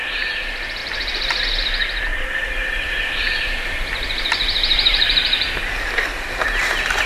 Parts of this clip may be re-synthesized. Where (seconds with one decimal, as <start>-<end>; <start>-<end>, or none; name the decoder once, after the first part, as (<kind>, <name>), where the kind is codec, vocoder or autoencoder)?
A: 0.8-1.5 (vocoder, BigVGAN v2); 2.1-6.3